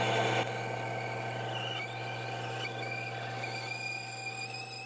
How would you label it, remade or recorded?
recorded